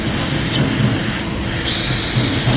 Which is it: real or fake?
real